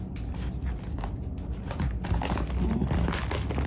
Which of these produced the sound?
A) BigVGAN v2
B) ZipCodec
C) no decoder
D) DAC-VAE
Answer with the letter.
C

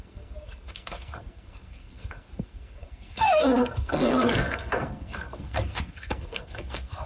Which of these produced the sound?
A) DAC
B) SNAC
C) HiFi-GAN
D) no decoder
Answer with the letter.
B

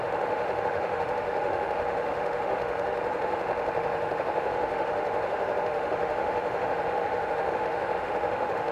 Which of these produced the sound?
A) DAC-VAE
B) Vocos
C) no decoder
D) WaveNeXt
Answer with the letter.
A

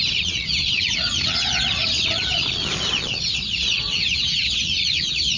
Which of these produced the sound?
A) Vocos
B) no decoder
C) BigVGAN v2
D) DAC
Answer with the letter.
A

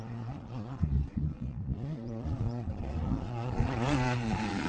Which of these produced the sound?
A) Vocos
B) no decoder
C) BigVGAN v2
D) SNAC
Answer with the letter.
A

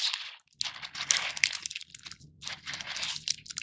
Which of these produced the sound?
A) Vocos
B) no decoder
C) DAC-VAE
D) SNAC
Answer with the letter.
B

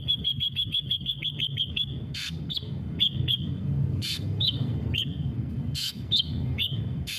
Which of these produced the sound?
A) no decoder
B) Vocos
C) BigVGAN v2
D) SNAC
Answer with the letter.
D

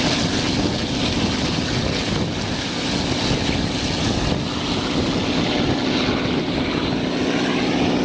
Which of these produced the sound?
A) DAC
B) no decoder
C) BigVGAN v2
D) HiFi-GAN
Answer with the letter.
B